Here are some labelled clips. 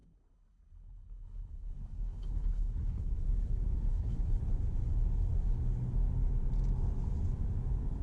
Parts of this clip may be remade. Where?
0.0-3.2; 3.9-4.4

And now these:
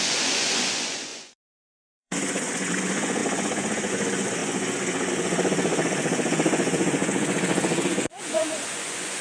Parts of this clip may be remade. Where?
0.0-9.2

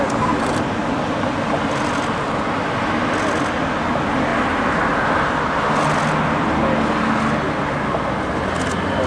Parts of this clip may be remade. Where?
none

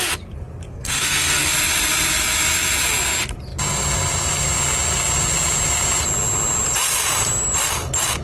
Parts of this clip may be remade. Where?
0.7-1.5

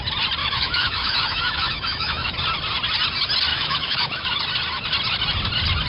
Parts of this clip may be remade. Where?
0.4-2.3; 3.5-4.4

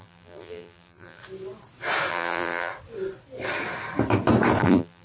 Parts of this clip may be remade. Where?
0.0-1.2; 2.1-2.7; 4.6-5.0

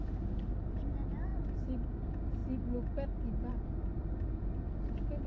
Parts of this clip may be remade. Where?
none

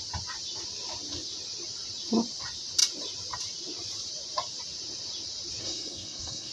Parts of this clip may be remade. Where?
5.6-6.5